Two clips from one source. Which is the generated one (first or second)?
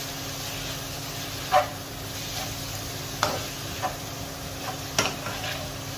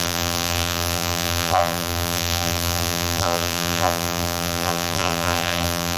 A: second